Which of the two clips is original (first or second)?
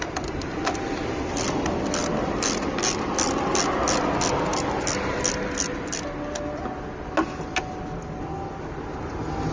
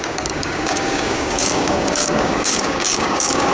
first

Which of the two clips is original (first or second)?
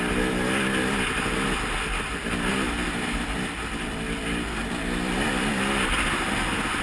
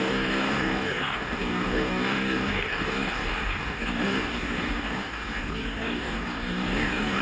first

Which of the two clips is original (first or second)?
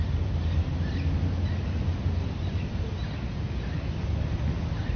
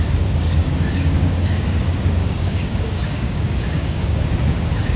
first